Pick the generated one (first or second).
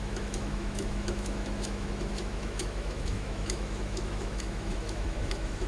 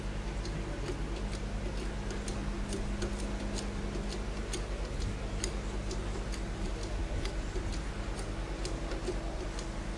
first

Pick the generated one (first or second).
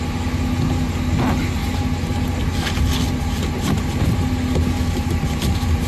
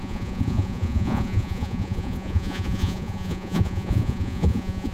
second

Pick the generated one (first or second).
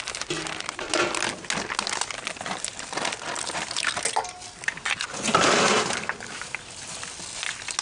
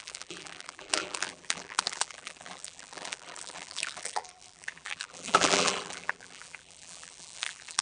second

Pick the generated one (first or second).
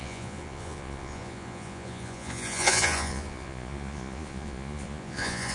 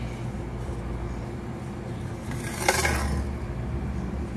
first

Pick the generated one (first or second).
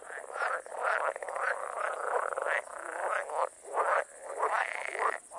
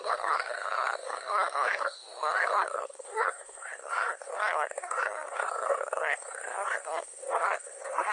second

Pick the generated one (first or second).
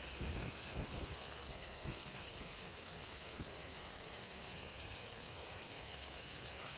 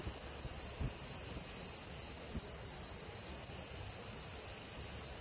first